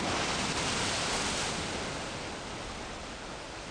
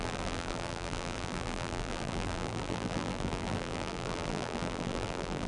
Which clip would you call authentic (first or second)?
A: first